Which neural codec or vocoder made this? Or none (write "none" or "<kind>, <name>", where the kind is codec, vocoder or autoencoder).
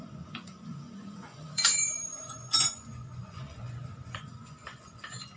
vocoder, Vocos